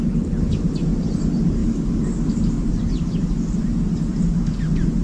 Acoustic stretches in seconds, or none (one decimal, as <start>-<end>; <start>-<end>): 0.0-5.0